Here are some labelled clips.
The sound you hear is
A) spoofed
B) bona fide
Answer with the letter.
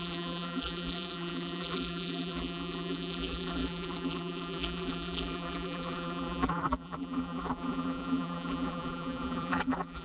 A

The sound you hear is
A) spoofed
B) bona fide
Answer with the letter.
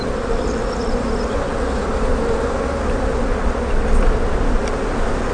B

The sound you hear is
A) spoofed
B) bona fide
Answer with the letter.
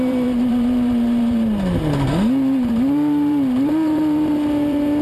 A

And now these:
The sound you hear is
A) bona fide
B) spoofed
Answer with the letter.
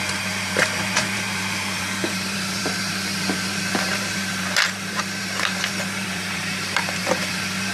B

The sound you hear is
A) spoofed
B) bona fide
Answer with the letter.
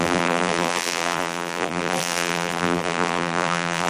A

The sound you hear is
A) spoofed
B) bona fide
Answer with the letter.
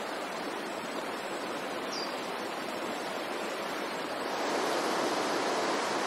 A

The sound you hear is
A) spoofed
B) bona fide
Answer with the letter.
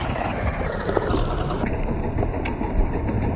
A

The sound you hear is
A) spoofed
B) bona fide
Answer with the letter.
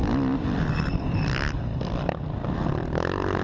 B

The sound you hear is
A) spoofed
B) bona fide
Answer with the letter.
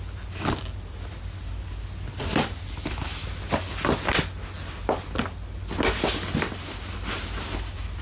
B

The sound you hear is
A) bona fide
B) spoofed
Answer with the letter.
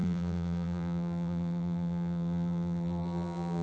B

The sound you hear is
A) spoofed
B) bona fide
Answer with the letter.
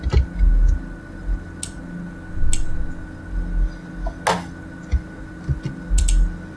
B